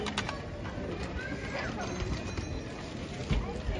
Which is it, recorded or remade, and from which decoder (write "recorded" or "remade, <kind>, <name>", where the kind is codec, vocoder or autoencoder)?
recorded